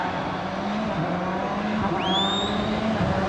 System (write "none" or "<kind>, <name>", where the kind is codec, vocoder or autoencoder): none